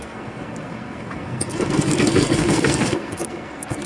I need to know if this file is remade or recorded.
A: remade